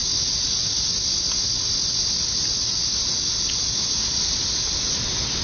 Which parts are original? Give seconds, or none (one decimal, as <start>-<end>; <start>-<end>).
0.0-5.4